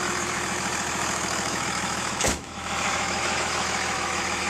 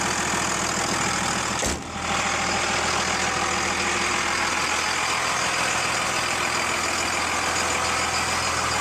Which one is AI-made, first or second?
first